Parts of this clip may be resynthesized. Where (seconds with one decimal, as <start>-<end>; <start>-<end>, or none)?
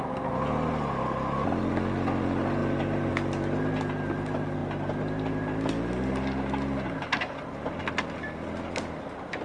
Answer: 2.6-3.1